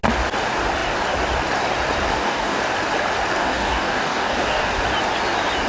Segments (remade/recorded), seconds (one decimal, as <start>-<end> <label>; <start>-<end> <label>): 0.0-2.1 recorded; 2.1-2.6 remade; 2.6-3.4 recorded; 3.4-4.7 remade; 4.7-5.7 recorded

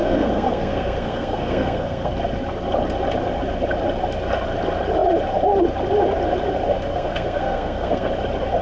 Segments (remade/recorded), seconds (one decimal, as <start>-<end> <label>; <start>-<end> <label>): 0.0-2.1 remade; 2.1-6.9 recorded; 6.9-8.1 remade; 8.1-8.6 recorded

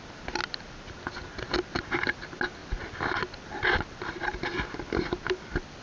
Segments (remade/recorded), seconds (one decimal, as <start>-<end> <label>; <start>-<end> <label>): 0.0-5.8 recorded

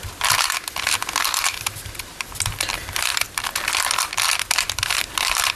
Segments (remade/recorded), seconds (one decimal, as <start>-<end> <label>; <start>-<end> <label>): 0.0-3.1 recorded; 3.1-4.1 remade; 4.1-5.6 recorded